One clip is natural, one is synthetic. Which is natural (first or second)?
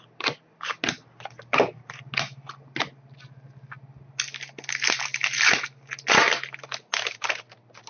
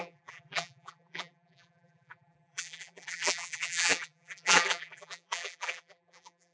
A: first